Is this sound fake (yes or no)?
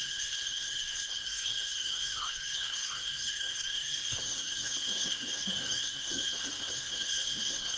yes